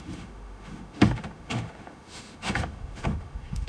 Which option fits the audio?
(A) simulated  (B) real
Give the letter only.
A